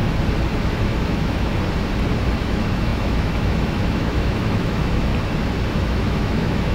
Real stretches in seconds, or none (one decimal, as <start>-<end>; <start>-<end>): 0.0-0.6; 1.5-2.4; 5.1-5.7